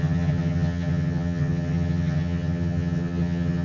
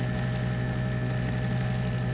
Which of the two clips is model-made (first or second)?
first